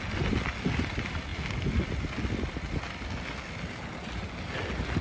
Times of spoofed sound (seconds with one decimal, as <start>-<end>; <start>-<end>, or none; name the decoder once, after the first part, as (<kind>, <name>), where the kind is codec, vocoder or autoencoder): none